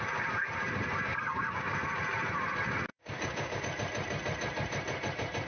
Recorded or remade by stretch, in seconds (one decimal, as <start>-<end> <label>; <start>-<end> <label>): 0.0-1.1 recorded; 1.1-1.8 remade; 1.8-2.9 recorded; 2.9-3.6 remade; 3.6-5.5 recorded